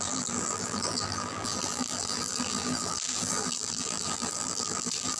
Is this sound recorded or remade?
remade